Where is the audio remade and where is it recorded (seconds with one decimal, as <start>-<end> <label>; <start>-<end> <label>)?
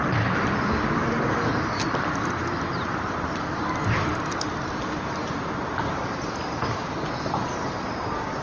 0.0-1.5 remade; 1.5-2.7 recorded; 2.7-8.4 remade